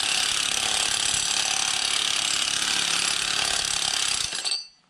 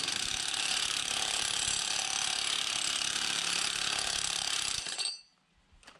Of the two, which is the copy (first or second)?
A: second